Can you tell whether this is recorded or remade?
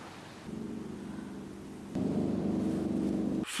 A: recorded